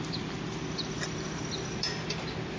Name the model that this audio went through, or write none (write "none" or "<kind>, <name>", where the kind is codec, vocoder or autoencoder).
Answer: none